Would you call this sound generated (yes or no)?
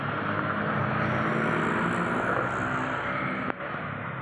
no